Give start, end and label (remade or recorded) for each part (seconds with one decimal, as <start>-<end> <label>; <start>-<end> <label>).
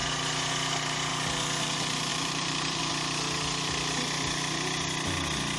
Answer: 0.0-2.1 recorded; 2.1-2.8 remade; 2.8-5.6 recorded